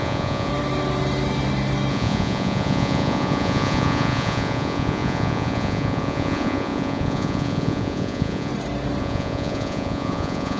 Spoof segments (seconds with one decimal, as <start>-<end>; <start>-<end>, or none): 0.0-0.5; 1.9-8.5; 9.0-10.6